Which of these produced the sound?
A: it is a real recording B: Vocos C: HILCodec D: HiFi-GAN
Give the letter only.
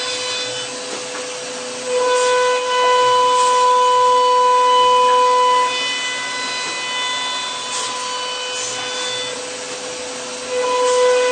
A